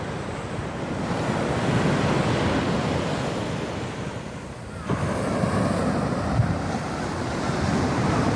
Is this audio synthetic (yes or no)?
no